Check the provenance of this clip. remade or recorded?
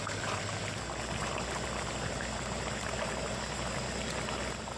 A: recorded